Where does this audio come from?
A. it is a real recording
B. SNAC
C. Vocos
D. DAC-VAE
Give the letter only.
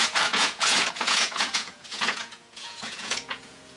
C